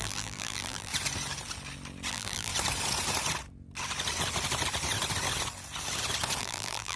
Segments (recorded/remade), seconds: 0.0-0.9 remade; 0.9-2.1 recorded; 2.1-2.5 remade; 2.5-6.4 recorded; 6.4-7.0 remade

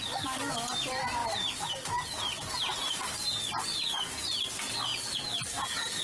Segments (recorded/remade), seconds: 0.0-4.9 recorded; 4.9-6.0 remade

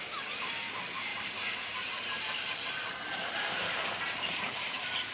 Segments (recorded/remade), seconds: 0.0-1.1 recorded; 1.1-2.1 remade; 2.1-3.1 recorded; 3.1-5.1 remade